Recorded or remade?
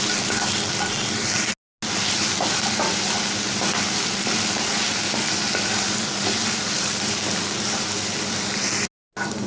recorded